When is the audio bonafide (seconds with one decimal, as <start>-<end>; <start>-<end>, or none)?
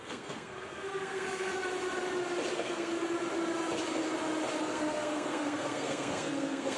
1.5-2.5; 2.9-4.6